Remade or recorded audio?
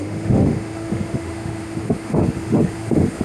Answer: remade